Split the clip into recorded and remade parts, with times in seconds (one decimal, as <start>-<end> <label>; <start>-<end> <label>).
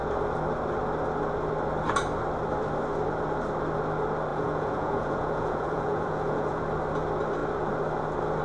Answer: 0.0-4.3 recorded; 4.3-6.6 remade; 6.6-8.4 recorded